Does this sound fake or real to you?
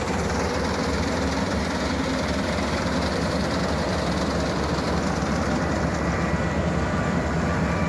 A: fake